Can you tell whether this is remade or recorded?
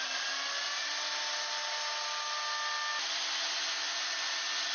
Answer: recorded